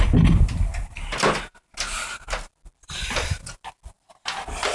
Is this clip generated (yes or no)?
no